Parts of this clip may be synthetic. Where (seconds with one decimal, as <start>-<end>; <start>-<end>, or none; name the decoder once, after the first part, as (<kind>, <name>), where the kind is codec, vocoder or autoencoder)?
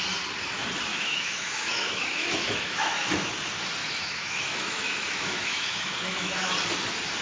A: 0.9-3.3 (autoencoder, DAC-VAE); 3.8-6.5